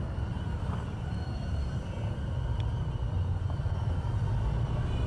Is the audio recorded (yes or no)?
yes